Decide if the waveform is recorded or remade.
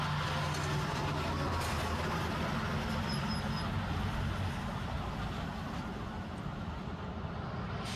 recorded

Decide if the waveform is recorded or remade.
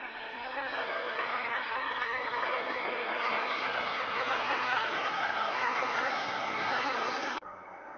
remade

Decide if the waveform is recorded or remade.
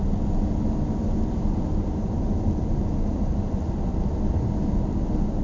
recorded